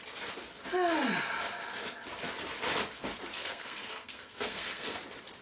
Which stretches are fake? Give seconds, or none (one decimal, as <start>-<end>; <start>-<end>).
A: 3.4-5.0